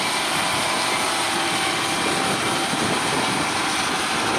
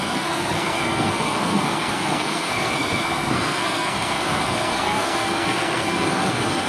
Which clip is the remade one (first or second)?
second